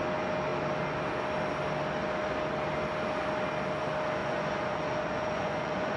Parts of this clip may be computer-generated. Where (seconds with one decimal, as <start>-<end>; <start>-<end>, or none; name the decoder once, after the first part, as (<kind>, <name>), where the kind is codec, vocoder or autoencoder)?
4.2-6.0 (vocoder, Vocos)